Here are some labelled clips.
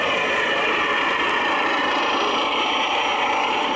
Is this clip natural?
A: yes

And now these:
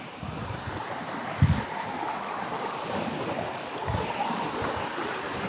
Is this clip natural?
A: yes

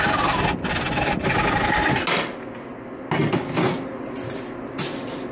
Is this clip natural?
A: yes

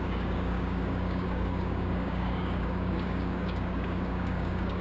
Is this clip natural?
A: no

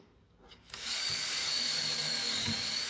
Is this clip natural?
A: no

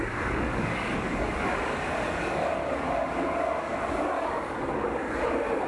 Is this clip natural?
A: no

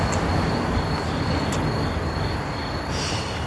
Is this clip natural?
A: yes